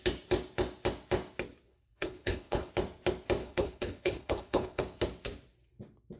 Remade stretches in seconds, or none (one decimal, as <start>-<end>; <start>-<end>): 1.7-2.7; 3.4-4.8